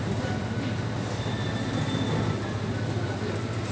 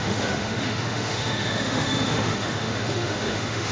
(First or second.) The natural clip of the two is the first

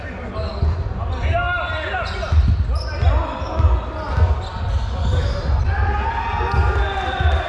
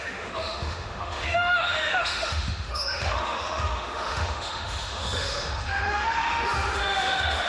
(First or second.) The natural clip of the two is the first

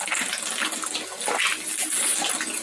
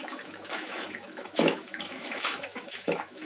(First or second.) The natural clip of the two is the first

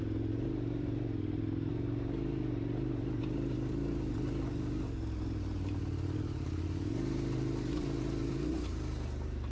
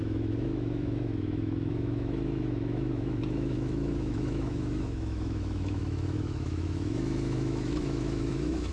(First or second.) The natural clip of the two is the first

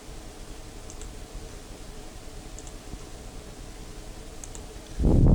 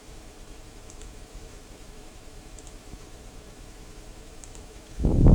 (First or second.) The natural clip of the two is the first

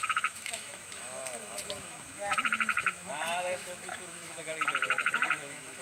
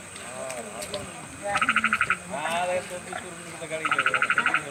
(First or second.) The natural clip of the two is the second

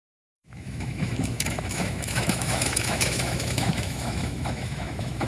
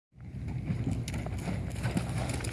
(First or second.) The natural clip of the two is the second